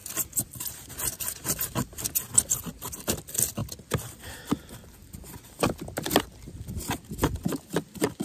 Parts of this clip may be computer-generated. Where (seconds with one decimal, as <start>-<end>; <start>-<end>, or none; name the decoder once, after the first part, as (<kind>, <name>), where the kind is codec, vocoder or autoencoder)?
0.0-0.9 (vocoder, BigVGAN v2)